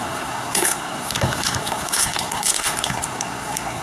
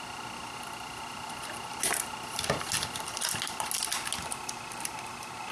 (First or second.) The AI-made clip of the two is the first